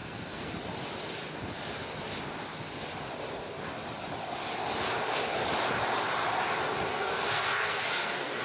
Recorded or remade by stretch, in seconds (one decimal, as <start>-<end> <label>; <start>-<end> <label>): 0.0-0.5 remade; 0.5-6.9 recorded; 6.9-8.4 remade